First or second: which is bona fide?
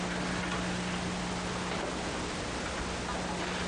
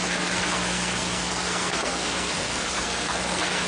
first